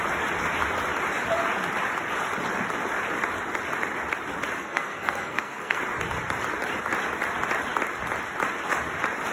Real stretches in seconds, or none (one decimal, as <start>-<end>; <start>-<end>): 0.0-4.6; 5.8-9.3